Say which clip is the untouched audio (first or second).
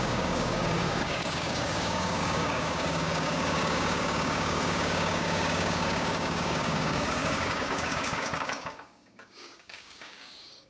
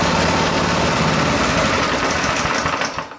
second